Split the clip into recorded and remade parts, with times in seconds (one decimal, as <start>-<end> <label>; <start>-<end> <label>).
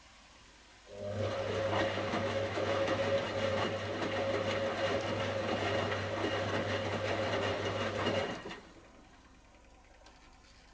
0.0-2.1 recorded; 2.1-3.0 remade; 3.0-10.7 recorded